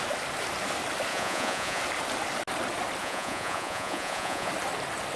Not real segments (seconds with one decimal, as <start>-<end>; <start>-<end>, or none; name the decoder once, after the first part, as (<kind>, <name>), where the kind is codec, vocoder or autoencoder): 1.1-1.8 (vocoder, Vocos); 3.0-4.5